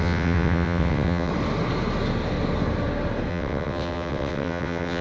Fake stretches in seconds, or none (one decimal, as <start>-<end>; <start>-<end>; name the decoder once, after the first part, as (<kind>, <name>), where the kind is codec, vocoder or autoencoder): 0.0-1.3 (vocoder, WaveNeXt); 3.3-5.0